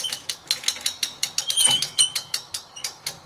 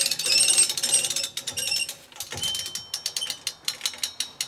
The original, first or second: second